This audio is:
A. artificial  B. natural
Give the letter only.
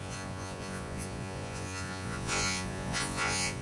A